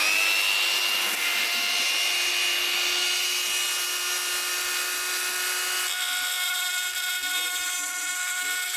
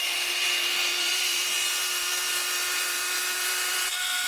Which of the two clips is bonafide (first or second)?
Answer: first